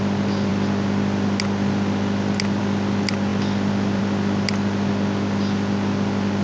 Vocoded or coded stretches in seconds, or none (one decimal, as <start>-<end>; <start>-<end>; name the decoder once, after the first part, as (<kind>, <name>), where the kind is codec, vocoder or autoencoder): none